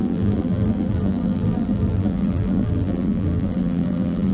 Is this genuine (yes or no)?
no